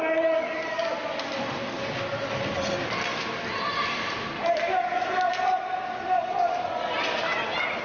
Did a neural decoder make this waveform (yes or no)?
no